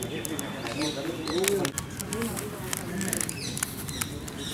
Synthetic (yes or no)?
no